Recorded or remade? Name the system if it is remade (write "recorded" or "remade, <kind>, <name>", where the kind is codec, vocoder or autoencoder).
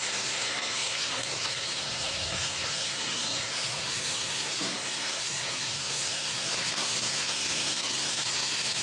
remade, codec, SNAC